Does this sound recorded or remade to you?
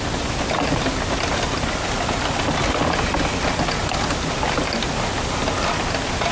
recorded